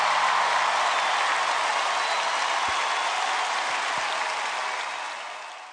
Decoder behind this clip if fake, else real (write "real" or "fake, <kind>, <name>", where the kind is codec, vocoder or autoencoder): real